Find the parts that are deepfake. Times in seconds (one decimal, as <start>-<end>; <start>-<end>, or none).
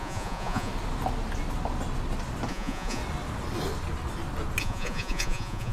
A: 0.0-0.7; 2.5-3.0; 4.6-5.7